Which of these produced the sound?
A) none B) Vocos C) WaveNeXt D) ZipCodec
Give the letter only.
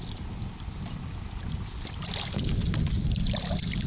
A